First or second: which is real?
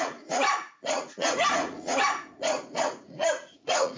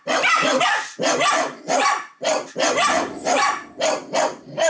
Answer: second